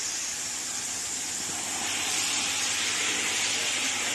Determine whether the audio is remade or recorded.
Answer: remade